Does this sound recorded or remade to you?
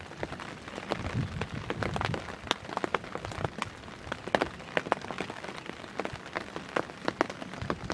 recorded